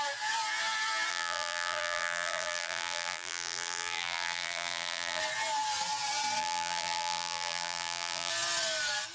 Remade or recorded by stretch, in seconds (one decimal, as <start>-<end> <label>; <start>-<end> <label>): 0.0-1.1 recorded; 1.1-5.2 remade; 5.2-6.4 recorded; 6.4-8.3 remade; 8.3-9.1 recorded